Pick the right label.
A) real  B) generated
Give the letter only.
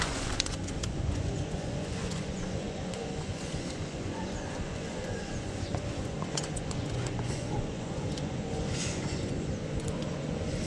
B